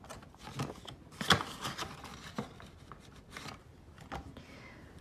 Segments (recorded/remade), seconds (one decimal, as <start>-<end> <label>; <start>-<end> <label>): 0.0-5.0 recorded